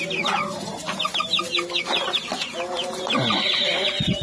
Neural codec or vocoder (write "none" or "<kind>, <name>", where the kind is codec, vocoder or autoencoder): none